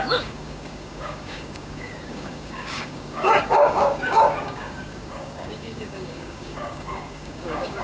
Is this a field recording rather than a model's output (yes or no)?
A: no